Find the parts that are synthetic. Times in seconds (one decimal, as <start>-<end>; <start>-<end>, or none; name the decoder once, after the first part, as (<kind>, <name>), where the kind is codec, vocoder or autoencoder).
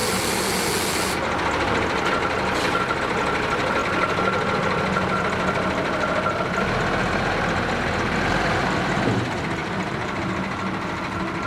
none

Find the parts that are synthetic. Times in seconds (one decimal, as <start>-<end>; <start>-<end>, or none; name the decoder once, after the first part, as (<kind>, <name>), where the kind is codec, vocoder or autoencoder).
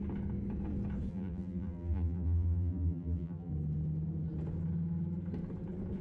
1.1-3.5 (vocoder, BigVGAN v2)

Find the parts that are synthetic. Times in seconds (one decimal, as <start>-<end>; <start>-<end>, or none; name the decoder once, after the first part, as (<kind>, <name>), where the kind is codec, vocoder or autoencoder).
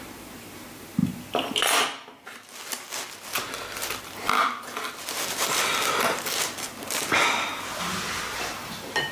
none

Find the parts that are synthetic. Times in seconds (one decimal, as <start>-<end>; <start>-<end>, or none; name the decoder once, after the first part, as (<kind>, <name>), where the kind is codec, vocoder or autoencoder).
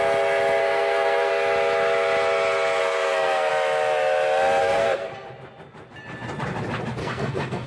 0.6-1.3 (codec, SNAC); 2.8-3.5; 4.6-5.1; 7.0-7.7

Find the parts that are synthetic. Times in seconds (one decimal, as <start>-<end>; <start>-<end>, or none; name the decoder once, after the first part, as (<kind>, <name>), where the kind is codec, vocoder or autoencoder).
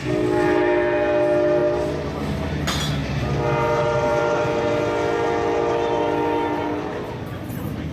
none